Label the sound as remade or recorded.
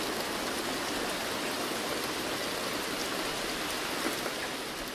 recorded